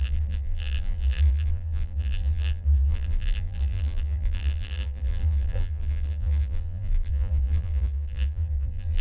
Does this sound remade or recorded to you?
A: remade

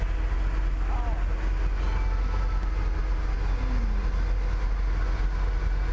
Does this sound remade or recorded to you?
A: recorded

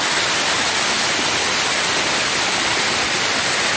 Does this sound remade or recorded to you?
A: recorded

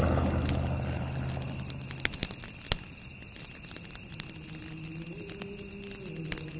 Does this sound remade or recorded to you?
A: recorded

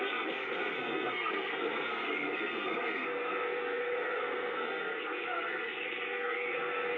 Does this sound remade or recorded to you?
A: remade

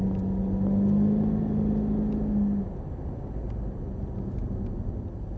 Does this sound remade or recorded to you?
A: recorded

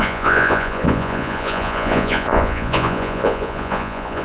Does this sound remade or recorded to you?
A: remade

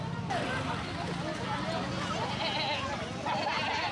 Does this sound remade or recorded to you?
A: recorded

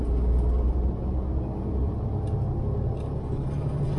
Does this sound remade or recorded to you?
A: recorded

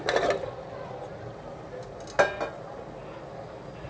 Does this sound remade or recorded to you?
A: recorded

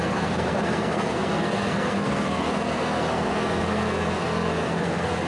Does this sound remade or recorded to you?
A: remade